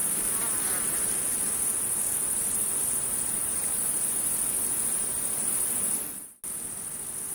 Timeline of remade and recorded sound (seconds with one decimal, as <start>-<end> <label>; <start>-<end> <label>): 0.0-1.5 remade; 1.5-7.3 recorded